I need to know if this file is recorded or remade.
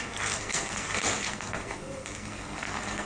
remade